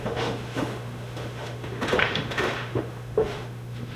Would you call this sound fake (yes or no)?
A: yes